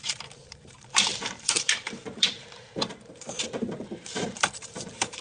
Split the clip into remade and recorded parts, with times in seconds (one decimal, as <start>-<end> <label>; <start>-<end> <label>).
0.0-5.2 remade